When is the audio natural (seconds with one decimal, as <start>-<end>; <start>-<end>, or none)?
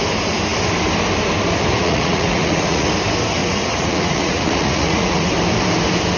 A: 0.0-1.8; 2.9-3.4; 5.3-6.2